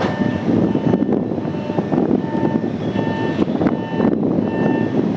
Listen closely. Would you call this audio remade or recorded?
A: recorded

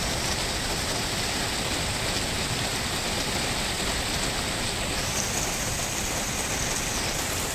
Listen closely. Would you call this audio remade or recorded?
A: recorded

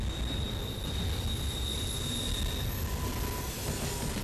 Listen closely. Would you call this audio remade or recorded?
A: recorded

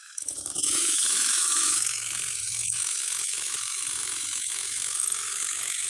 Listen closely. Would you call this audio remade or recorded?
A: remade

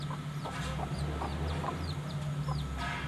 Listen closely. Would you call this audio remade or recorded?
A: recorded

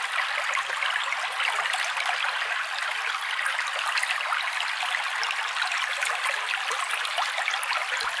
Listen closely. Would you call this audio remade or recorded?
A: recorded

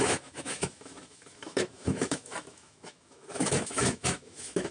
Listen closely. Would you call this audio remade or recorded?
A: remade